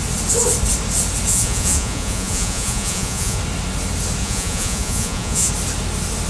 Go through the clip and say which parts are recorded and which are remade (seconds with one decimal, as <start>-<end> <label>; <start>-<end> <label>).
0.0-1.3 recorded; 1.3-3.4 remade; 3.4-4.2 recorded; 4.2-5.5 remade; 5.5-6.3 recorded